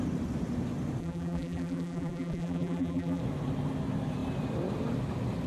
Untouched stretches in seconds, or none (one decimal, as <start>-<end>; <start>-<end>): 0.0-1.0; 3.2-5.5